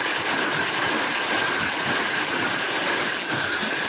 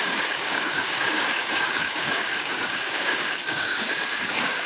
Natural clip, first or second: first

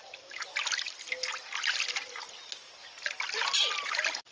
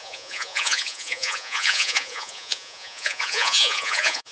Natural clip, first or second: first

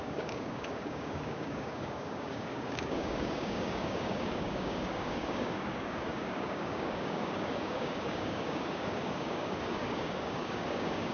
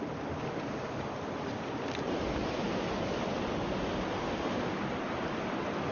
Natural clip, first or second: second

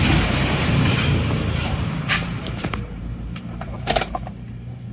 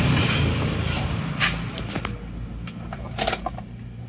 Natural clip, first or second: second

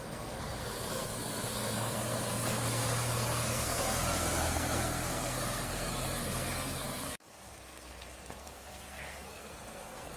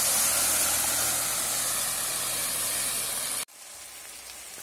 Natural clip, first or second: second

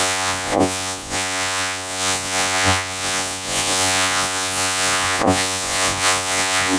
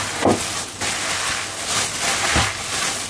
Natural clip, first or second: second